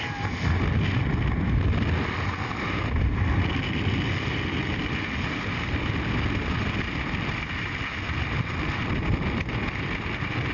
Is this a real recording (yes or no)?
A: yes